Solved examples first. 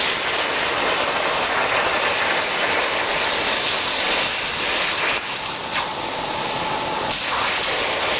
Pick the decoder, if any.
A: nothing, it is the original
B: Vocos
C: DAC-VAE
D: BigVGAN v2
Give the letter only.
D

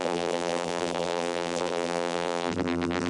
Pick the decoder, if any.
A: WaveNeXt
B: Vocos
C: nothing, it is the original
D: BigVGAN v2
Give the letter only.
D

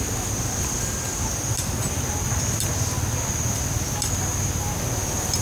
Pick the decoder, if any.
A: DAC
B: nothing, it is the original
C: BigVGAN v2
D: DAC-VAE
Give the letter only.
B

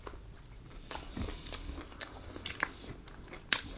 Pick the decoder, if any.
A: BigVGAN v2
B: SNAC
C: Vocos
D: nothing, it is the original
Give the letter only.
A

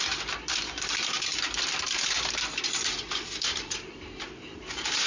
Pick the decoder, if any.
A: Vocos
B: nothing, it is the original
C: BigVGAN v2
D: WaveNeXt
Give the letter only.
C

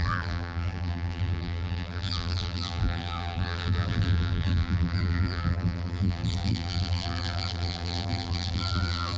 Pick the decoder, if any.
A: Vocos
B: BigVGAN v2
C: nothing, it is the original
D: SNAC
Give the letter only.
B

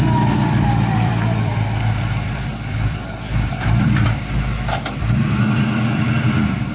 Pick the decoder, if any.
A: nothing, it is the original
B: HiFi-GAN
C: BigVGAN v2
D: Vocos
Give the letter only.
C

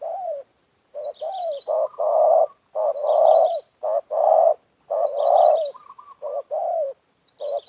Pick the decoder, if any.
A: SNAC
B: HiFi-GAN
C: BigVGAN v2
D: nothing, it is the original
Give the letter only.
C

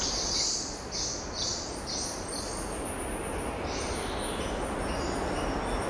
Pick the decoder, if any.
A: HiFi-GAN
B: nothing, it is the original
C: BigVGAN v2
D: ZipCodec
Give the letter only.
B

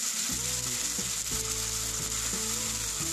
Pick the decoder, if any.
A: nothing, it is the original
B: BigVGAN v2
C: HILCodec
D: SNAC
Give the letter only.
A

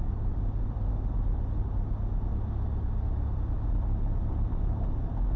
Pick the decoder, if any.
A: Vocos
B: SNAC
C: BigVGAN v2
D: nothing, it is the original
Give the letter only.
D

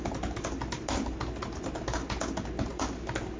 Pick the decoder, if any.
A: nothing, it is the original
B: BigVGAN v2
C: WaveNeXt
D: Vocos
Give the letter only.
A